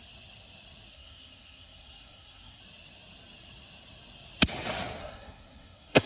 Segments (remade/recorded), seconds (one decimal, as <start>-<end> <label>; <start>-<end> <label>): 0.0-0.9 recorded; 0.9-2.6 remade; 2.6-5.0 recorded; 5.0-6.1 remade